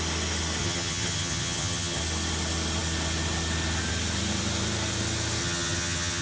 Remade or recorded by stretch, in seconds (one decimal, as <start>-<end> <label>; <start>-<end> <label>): 0.0-0.6 recorded; 0.6-2.0 remade; 2.0-5.4 recorded; 5.4-6.2 remade